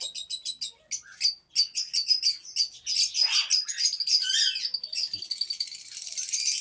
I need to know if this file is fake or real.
real